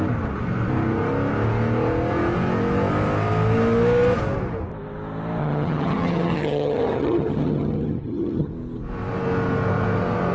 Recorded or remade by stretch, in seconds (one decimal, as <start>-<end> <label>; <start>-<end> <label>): 0.0-5.4 recorded; 5.4-8.5 remade; 8.5-10.3 recorded